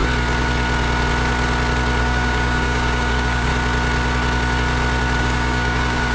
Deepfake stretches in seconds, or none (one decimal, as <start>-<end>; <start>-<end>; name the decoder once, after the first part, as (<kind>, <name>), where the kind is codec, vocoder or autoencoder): 2.0-3.5 (codec, DAC); 5.2-6.1